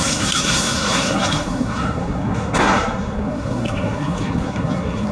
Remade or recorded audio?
remade